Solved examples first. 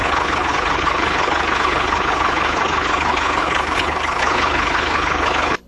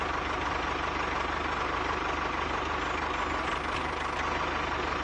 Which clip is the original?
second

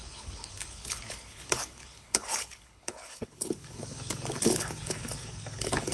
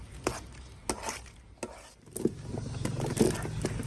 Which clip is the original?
second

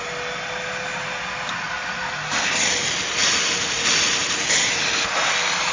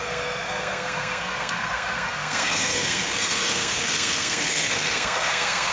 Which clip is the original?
first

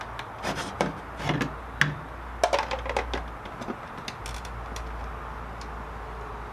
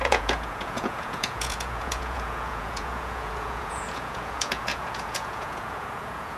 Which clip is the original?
first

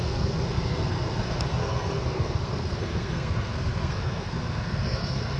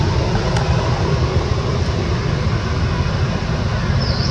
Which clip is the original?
second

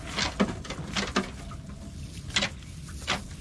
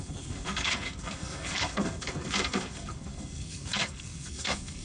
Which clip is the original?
first